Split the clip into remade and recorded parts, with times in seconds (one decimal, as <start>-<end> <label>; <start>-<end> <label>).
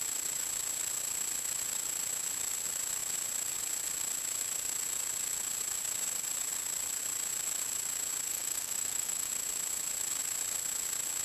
0.0-8.3 recorded; 8.3-9.3 remade; 9.3-11.2 recorded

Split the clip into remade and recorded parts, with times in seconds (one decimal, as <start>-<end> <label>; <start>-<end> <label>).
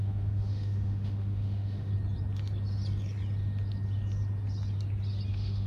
0.0-1.9 remade; 1.9-5.3 recorded; 5.3-5.7 remade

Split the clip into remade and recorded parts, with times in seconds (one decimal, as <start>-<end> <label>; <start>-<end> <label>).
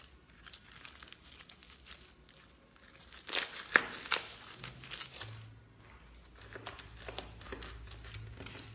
0.0-8.7 recorded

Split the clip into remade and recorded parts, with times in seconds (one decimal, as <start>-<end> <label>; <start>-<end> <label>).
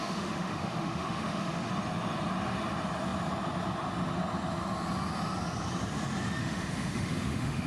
0.0-1.7 remade; 1.7-6.4 recorded; 6.4-7.7 remade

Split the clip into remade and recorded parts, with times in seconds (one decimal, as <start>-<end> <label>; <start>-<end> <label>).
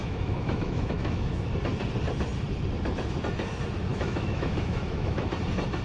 0.0-1.5 remade; 1.5-3.9 recorded; 3.9-5.3 remade; 5.3-5.8 recorded